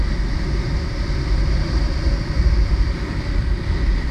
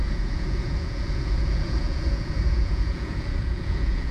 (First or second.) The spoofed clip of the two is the second